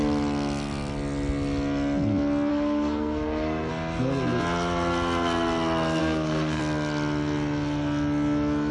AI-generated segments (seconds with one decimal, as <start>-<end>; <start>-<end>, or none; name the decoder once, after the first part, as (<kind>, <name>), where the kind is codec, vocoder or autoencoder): 2.5-3.7 (codec, SNAC); 6.0-6.6